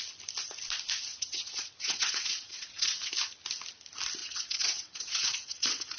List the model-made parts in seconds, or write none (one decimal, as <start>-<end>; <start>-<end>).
1.1-3.1; 4.2-6.0